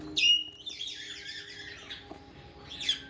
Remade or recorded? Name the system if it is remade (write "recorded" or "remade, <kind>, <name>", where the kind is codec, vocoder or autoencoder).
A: recorded